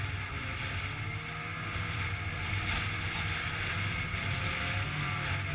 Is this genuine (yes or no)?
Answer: yes